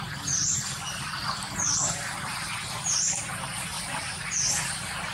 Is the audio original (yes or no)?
yes